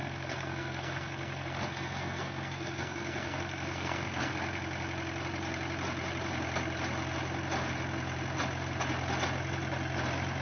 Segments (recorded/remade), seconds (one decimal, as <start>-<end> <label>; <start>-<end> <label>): 0.0-4.3 remade; 4.3-10.4 recorded